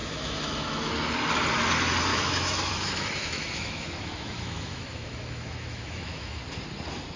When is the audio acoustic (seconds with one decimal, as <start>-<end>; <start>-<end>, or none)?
0.9-2.1; 6.4-7.2

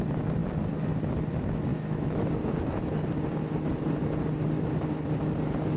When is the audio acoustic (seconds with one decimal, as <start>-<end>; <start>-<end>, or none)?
0.0-1.7; 2.3-5.8

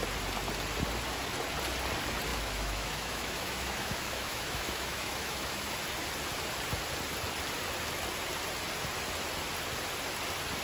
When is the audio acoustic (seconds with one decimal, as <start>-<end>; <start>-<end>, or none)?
0.0-2.3; 5.7-10.6

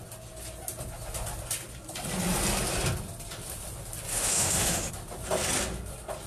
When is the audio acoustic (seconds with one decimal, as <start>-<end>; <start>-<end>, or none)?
0.0-4.1; 4.9-6.3

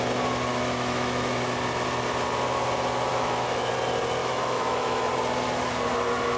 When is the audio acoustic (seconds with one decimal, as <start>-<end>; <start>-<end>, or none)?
0.0-0.5; 1.5-3.1; 3.7-4.2; 5.1-6.4

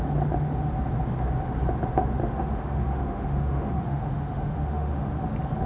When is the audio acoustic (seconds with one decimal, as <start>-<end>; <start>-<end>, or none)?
0.0-2.2; 5.1-5.7

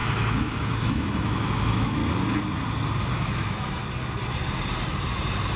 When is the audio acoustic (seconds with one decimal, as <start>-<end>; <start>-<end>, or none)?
2.0-3.0; 3.8-5.6

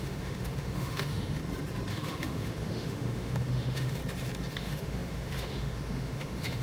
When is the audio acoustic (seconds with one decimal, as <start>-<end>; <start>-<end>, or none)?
1.4-1.9; 4.0-4.5